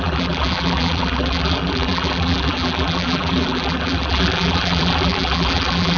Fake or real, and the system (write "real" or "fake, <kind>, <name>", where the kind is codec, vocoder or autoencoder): fake, vocoder, BigVGAN v2